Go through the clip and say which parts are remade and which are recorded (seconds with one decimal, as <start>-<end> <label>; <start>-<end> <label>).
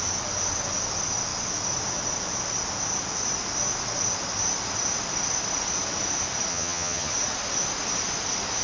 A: 0.0-6.5 recorded; 6.5-7.1 remade; 7.1-8.6 recorded